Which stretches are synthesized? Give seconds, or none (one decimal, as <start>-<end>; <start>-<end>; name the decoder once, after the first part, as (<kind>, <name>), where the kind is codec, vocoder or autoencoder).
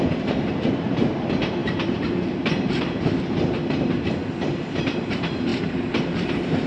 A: 0.0-4.2 (vocoder, BigVGAN v2); 4.8-6.7